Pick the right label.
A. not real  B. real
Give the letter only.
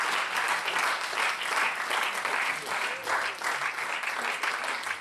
B